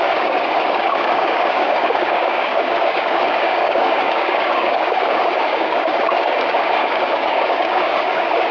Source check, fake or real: fake